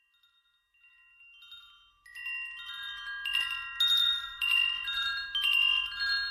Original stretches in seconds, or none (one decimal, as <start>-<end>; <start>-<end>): 0.0-4.0; 4.6-6.3